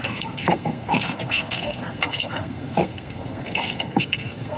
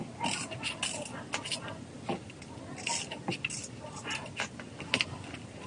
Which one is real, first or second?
second